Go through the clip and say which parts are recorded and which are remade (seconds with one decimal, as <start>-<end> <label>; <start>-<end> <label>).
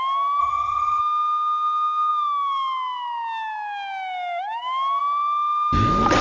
0.0-0.4 recorded; 0.4-1.0 remade; 1.0-6.2 recorded